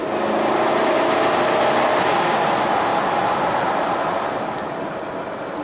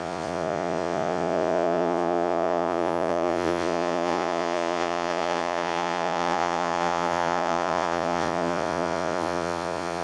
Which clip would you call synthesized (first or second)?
second